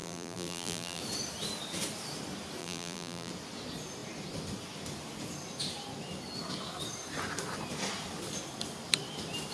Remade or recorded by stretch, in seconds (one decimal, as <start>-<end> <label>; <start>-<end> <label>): 0.0-1.0 remade; 1.0-2.6 recorded; 2.6-3.3 remade; 3.3-9.5 recorded